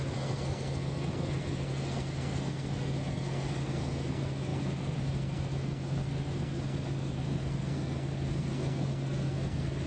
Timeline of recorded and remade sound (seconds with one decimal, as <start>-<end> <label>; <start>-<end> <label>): 0.0-9.9 remade